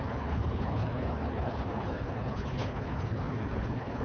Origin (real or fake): fake